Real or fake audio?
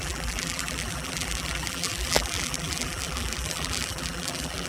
fake